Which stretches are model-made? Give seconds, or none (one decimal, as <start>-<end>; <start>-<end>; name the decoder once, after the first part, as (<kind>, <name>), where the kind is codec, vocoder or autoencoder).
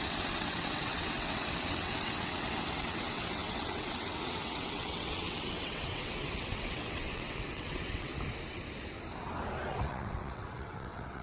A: 0.0-8.1 (vocoder, WaveNeXt); 9.7-11.2